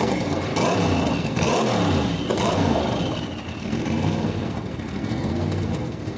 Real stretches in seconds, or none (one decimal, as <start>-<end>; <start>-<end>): 0.5-1.1; 1.5-2.3; 2.8-3.6